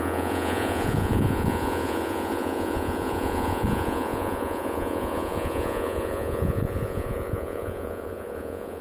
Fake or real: fake